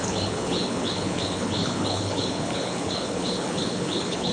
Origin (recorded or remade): remade